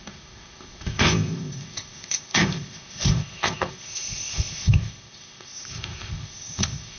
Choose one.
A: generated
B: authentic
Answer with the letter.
A